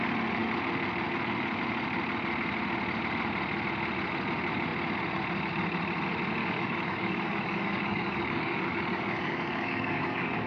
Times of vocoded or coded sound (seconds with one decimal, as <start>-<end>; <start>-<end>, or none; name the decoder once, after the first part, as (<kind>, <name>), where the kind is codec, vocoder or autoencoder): 6.4-10.5 (codec, DAC)